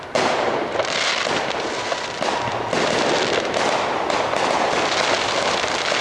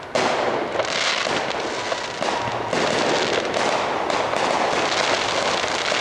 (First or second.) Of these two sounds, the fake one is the first